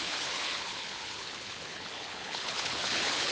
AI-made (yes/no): yes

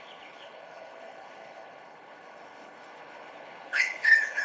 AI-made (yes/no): yes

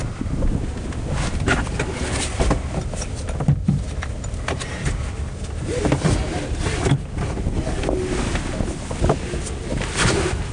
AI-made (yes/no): no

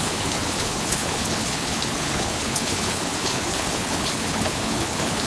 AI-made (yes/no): yes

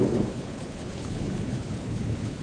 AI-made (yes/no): yes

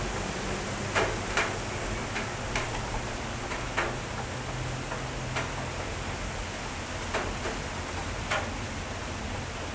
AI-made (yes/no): no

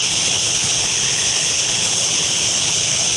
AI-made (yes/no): yes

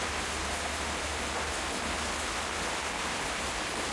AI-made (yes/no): no